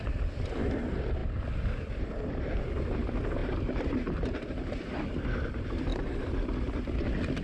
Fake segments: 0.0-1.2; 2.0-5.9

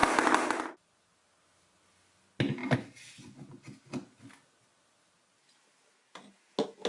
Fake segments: none